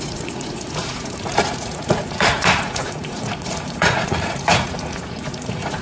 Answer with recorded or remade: remade